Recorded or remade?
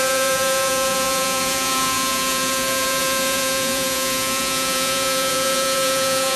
remade